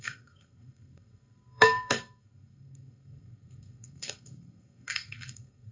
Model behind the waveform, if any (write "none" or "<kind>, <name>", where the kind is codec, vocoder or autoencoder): codec, SNAC